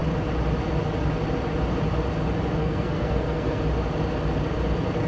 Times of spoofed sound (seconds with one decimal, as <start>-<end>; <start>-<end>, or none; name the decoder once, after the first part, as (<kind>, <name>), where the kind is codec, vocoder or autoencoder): 2.6-3.6 (codec, SNAC)